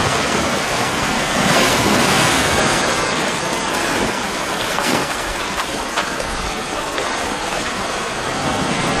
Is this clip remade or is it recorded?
remade